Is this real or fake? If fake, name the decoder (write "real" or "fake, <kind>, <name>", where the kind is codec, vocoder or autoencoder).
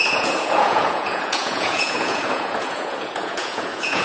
fake, vocoder, Vocos